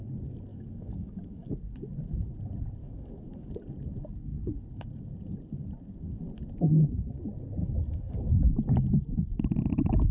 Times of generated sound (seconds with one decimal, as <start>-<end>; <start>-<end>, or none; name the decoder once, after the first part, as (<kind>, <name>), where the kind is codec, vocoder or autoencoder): 0.5-1.5 (codec, DAC); 2.8-3.5; 7.6-8.3